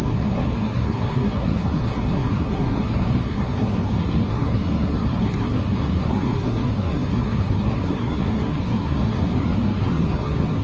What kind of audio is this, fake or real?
fake